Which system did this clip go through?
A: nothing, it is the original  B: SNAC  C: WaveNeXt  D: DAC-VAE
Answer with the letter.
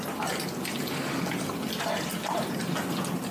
A